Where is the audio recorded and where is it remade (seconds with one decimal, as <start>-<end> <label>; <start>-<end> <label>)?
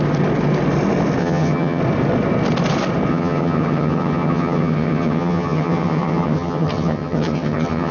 0.0-1.2 recorded; 1.2-1.8 remade; 1.8-3.1 recorded; 3.1-7.9 remade